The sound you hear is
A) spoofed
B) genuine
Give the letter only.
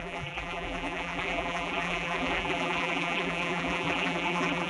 A